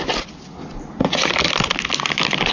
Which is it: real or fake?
real